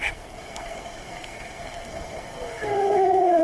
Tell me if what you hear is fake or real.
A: fake